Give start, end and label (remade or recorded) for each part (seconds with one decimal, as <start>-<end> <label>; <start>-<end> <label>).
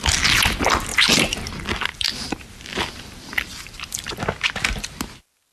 0.0-0.9 recorded; 0.9-4.2 remade; 4.2-5.5 recorded